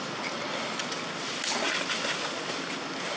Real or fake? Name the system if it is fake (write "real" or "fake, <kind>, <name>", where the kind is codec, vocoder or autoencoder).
real